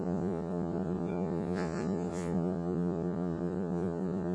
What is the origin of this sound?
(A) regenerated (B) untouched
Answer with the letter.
A